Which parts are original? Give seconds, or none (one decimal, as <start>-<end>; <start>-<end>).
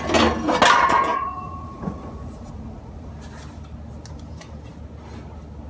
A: 0.0-1.1; 3.1-5.7